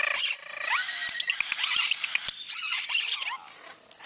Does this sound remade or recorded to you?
recorded